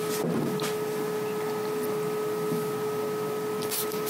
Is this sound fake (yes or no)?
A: no